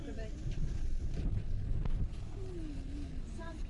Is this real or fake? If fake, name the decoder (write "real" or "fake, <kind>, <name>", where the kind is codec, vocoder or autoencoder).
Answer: real